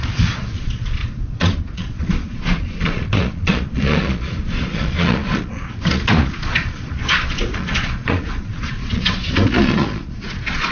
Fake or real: fake